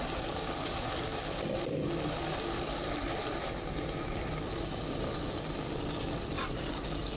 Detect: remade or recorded recorded